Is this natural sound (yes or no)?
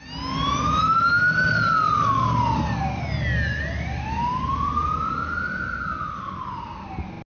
yes